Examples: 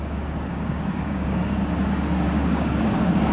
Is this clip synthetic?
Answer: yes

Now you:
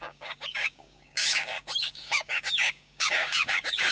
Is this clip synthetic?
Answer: yes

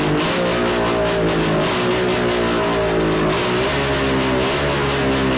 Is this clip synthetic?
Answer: no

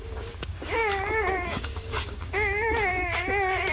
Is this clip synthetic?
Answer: yes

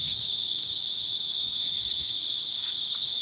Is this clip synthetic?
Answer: yes